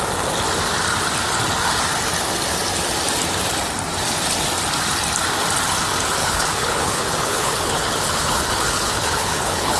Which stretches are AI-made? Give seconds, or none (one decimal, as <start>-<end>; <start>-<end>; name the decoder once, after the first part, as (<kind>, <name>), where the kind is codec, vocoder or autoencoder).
6.2-9.8 (codec, HILCodec)